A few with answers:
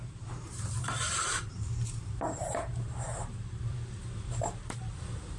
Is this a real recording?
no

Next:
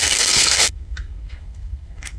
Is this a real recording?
no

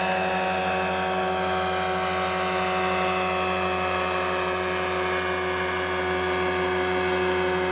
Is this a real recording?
yes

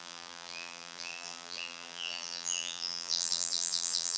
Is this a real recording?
no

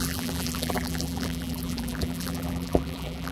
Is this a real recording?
no